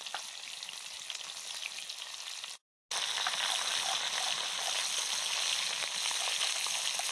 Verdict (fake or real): real